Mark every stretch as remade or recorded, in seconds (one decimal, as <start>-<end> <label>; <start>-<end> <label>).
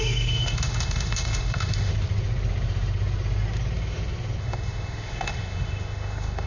0.0-1.9 remade; 1.9-4.4 recorded; 4.4-6.5 remade